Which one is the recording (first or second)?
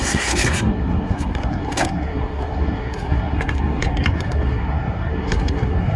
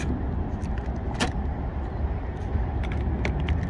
second